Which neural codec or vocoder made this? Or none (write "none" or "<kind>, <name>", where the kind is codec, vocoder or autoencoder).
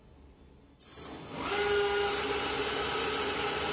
none